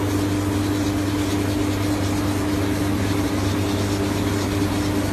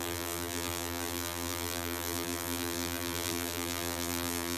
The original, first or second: first